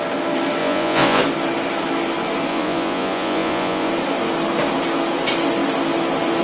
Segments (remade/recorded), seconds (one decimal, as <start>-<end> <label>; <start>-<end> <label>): 0.0-0.6 recorded; 0.6-1.2 remade; 1.2-2.5 recorded; 2.5-3.9 remade; 3.9-6.4 recorded